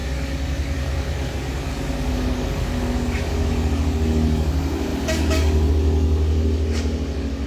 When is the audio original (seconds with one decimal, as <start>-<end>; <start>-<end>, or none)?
none